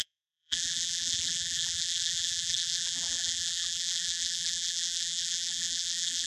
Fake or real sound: fake